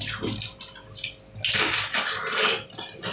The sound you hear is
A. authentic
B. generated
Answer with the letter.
A